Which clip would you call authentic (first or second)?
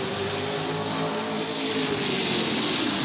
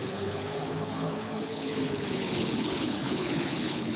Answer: first